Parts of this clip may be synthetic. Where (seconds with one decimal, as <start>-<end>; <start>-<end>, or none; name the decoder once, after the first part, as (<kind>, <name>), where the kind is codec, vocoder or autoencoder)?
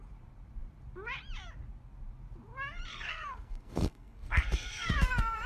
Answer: 2.9-5.1 (codec, SNAC)